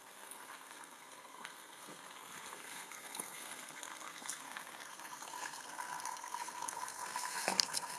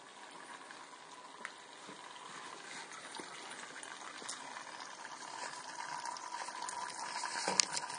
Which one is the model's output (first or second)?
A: first